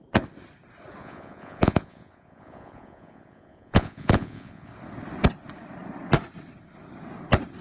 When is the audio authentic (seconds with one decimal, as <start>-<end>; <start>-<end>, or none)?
0.0-1.0; 4.7-7.6